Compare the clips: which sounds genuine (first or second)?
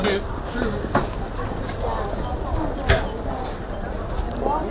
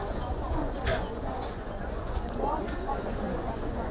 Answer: first